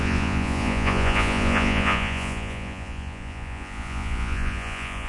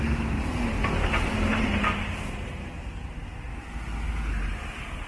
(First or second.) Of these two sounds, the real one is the second